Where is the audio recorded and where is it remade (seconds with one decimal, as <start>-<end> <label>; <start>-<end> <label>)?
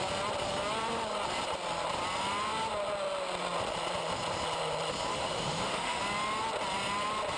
0.0-5.1 recorded; 5.1-6.0 remade; 6.0-7.4 recorded